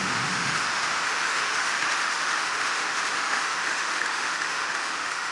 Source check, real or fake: fake